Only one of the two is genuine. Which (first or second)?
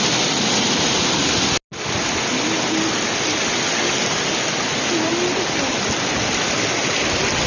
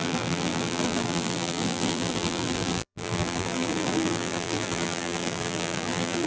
first